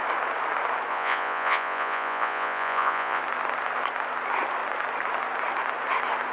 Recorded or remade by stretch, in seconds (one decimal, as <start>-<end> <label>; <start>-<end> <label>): 0.0-0.9 recorded; 0.9-3.2 remade; 3.2-6.3 recorded